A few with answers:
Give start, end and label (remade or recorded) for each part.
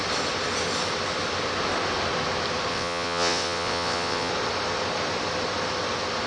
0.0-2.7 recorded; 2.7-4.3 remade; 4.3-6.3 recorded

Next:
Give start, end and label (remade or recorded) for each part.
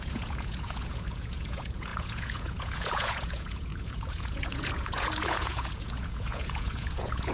0.0-7.3 remade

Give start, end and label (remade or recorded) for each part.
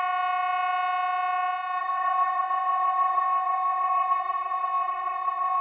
0.0-1.8 recorded; 1.8-5.6 remade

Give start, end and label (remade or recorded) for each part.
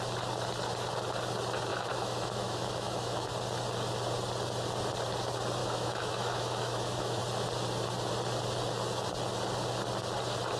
0.0-1.7 recorded; 1.7-3.3 remade; 3.3-5.6 recorded; 5.6-7.2 remade; 7.2-10.6 recorded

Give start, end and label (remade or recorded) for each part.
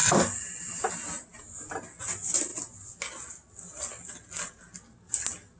0.0-5.6 recorded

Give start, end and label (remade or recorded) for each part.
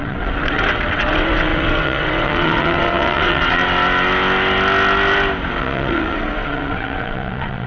0.0-3.6 remade; 3.6-5.5 recorded; 5.5-7.7 remade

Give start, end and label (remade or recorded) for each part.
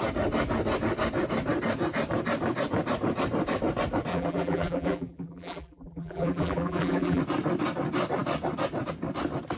0.0-4.1 recorded; 4.1-7.2 remade; 7.2-9.6 recorded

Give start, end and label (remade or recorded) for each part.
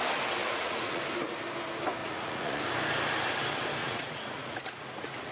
0.0-0.4 recorded; 0.4-1.0 remade; 1.0-2.0 recorded; 2.0-2.6 remade; 2.6-3.8 recorded; 3.8-5.3 remade